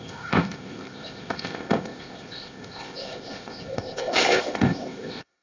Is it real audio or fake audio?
fake